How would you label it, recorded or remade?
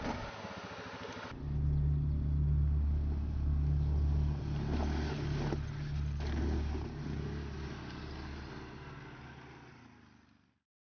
recorded